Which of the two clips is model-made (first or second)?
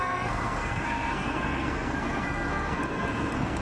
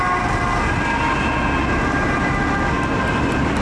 first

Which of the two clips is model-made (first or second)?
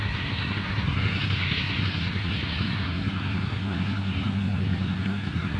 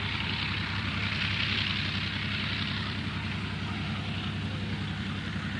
first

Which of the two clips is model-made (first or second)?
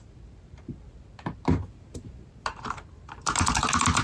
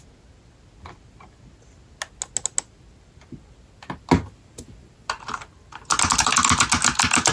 first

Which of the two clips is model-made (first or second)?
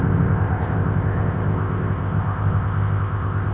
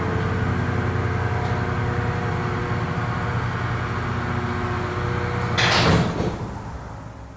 first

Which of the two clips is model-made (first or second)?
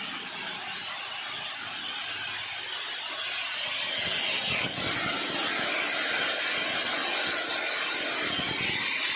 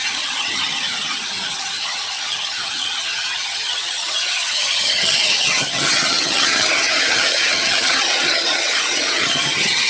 second